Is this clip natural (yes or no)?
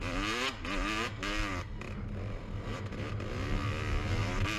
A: yes